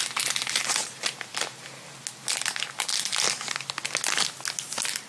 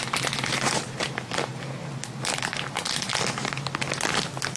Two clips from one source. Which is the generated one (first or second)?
second